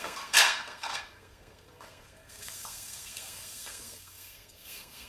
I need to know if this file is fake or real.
fake